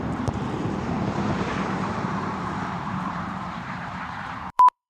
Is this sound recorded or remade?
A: remade